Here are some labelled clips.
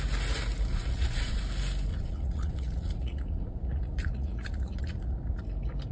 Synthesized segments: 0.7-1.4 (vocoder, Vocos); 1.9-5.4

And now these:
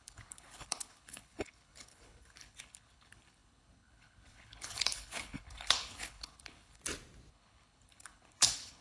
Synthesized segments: 0.0-6.8 (codec, HILCodec); 7.3-8.8

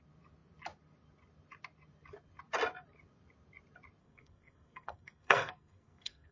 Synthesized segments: 4.0-6.3 (codec, SNAC)

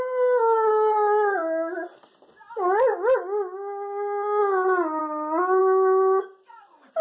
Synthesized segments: none

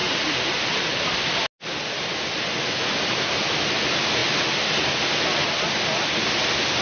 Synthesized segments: none

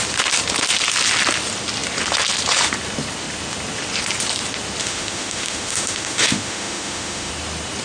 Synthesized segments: 4.8-7.3 (autoencoder, DAC-VAE)

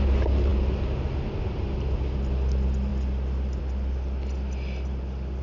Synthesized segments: none

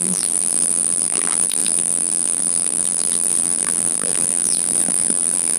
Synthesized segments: 0.0-5.6 (vocoder, BigVGAN v2)